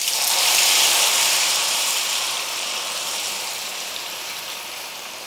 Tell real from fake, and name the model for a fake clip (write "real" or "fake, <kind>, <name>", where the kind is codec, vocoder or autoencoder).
fake, vocoder, BigVGAN v2